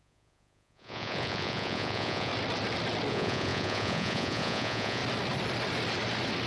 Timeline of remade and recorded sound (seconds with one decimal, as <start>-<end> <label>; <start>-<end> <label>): 0.0-2.3 remade; 2.3-3.1 recorded; 3.1-5.0 remade; 5.0-6.5 recorded